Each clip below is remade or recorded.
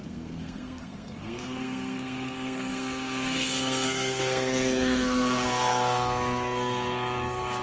remade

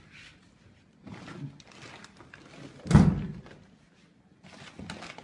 recorded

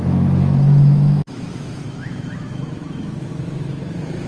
remade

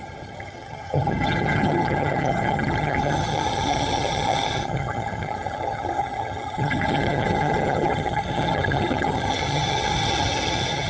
remade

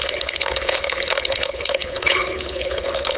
remade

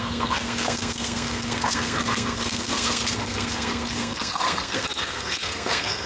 remade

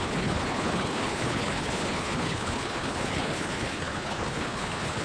remade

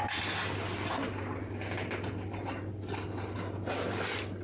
recorded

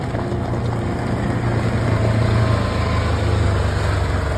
recorded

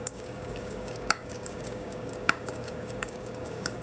remade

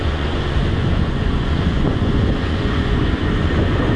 remade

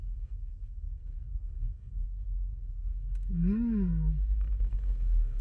remade